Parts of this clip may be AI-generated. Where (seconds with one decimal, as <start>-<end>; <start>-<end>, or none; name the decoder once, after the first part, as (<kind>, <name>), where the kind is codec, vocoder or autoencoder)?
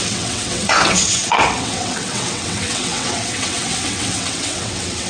0.0-5.1 (vocoder, WaveNeXt)